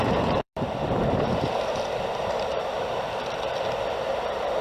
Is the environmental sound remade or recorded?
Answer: remade